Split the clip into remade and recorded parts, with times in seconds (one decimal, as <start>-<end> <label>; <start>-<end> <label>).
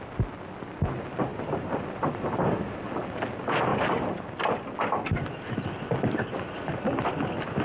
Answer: 0.0-1.3 recorded; 1.3-2.8 remade; 2.8-3.7 recorded; 3.7-4.2 remade; 4.2-7.6 recorded